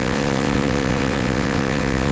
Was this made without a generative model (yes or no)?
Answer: no